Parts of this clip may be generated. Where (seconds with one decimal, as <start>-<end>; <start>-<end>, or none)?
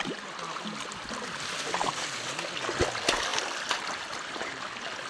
none